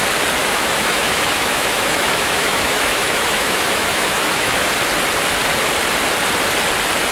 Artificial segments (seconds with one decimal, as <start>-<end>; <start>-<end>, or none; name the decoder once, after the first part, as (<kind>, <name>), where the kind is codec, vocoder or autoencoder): 0.4-4.7 (autoencoder, DAC-VAE)

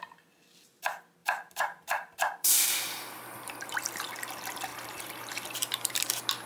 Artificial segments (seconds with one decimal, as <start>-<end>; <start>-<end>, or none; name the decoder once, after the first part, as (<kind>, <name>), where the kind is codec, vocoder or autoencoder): 1.2-4.0 (vocoder, BigVGAN v2); 4.7-5.9

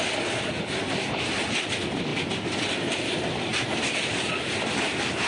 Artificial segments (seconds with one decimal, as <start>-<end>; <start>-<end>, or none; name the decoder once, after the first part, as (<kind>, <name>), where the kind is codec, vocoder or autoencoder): none

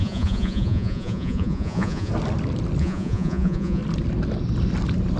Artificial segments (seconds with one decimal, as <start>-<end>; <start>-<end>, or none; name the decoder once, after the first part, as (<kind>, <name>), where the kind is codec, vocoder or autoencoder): 0.0-2.1 (vocoder, Vocos); 2.8-3.8

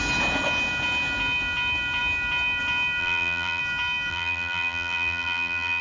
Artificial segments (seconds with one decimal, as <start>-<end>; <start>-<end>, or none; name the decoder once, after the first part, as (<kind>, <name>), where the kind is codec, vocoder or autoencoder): 3.0-3.6 (vocoder, BigVGAN v2); 4.1-5.8

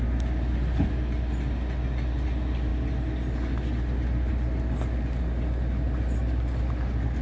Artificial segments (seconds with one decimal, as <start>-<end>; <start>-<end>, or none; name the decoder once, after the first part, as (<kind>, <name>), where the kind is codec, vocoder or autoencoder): none

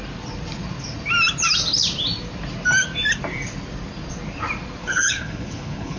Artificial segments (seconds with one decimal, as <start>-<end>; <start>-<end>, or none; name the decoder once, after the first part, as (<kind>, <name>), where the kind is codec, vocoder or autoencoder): 4.8-6.0 (codec, HILCodec)

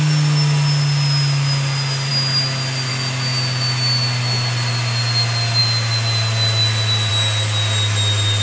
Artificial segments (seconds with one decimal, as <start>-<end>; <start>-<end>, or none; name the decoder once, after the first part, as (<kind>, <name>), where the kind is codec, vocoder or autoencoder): none